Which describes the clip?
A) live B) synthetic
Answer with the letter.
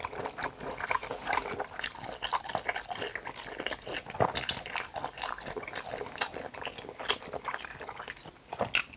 A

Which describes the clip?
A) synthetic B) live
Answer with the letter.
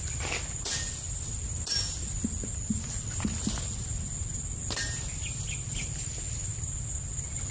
B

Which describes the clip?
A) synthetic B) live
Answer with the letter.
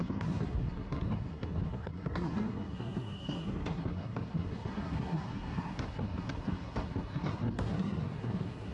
A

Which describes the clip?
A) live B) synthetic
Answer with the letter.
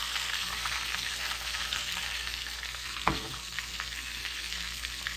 B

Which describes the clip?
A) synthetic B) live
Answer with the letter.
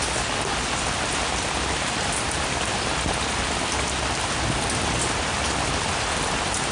B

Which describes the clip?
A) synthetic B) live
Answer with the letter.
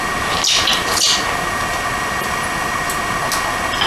B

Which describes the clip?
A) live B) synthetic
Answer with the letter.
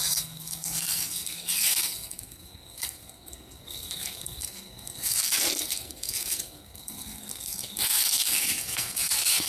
B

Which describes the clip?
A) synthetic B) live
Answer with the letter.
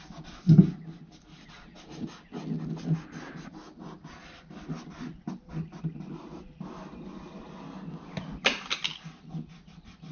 B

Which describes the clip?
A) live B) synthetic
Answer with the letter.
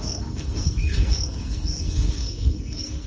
B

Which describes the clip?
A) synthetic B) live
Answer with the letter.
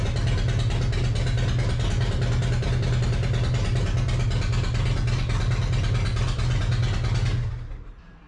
B